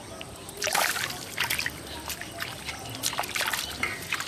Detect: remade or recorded recorded